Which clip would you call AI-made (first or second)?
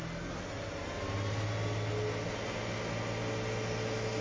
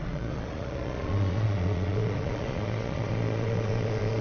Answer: second